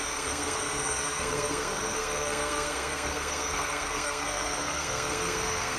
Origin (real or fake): fake